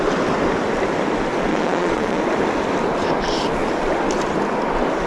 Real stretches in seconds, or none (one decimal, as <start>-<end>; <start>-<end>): 0.0-1.5; 2.2-5.1